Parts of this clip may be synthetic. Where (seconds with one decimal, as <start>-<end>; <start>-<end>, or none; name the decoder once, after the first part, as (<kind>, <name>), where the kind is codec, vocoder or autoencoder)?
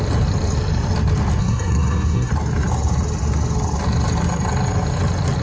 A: 1.4-2.3 (codec, SNAC)